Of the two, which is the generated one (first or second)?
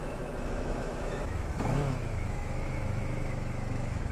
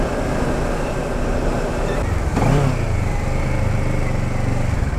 first